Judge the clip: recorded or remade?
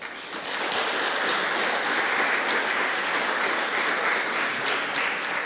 recorded